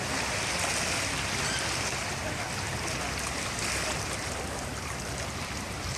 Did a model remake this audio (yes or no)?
no